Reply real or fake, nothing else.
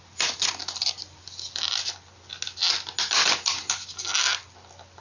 real